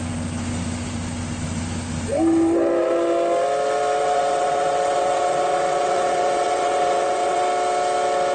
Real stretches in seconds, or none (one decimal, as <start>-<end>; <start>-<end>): 0.0-4.0; 7.4-8.3